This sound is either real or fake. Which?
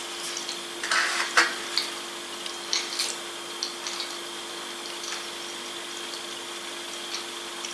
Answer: real